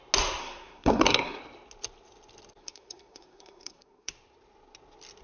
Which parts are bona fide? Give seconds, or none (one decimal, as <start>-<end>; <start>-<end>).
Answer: 0.0-0.4; 1.4-2.6; 4.1-5.2